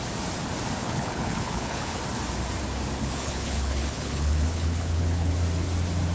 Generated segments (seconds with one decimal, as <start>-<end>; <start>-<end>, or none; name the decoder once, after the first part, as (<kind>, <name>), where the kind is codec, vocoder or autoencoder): 0.8-2.0 (codec, HILCodec); 3.0-5.3

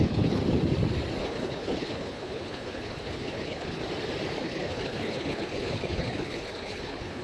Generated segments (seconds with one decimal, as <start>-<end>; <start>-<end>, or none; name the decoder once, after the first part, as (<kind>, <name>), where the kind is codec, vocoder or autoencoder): 0.0-0.4 (codec, HILCodec); 1.2-3.8; 4.4-7.2

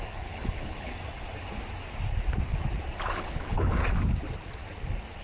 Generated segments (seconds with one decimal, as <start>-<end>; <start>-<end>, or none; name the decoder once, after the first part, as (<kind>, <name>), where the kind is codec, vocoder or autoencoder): 0.0-0.9 (codec, HILCodec); 3.0-3.8

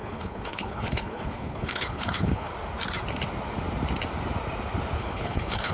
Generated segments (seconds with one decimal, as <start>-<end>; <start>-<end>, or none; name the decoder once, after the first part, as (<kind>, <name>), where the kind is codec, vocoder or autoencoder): 0.0-2.5 (codec, HILCodec); 5.0-5.7

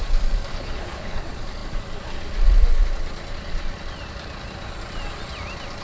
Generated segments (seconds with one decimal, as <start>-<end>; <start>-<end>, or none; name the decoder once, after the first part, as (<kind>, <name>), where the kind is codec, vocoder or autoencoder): 0.5-1.2 (codec, HILCodec)

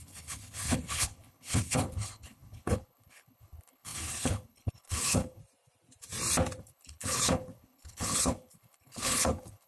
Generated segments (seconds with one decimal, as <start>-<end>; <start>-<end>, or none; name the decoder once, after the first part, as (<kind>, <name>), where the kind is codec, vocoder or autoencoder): 0.0-5.4 (codec, HILCodec); 6.6-9.7

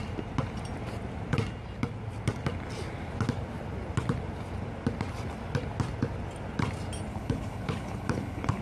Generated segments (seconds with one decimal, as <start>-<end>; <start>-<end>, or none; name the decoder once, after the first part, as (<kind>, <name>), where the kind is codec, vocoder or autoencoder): 7.1-8.6 (codec, HILCodec)